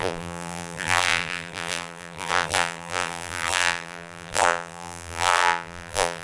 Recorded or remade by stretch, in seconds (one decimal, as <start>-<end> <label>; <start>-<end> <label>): 0.0-6.2 remade

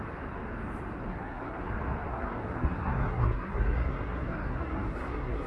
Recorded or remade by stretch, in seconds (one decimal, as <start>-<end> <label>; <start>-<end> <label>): 0.0-1.1 recorded; 1.1-1.7 remade; 1.7-2.1 recorded; 2.1-5.5 remade

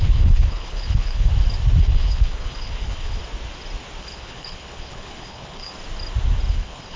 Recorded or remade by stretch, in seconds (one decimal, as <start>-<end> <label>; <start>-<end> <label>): 0.0-1.3 remade; 1.3-1.8 recorded; 1.8-3.2 remade; 3.2-4.0 recorded; 4.0-5.7 remade; 5.7-6.5 recorded; 6.5-7.0 remade

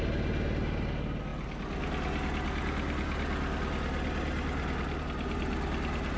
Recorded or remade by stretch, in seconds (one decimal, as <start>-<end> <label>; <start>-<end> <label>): 0.0-6.2 recorded

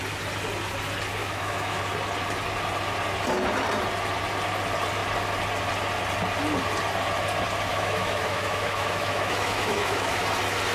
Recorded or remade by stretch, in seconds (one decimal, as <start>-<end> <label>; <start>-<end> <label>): 0.0-1.2 recorded; 1.2-1.8 remade; 1.8-7.7 recorded; 7.7-10.2 remade; 10.2-10.7 recorded

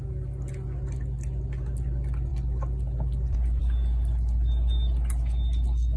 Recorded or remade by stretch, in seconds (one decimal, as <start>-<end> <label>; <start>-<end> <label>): 0.0-6.0 recorded